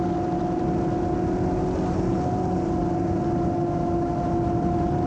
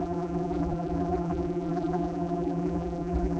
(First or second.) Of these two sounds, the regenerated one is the second